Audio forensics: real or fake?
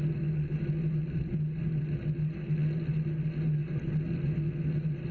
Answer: real